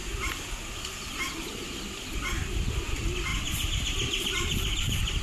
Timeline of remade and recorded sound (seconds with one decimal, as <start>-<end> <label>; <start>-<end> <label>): 0.0-5.2 recorded